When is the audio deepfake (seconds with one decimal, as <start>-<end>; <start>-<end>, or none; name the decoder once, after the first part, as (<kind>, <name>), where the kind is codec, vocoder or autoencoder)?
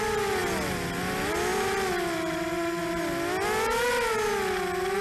none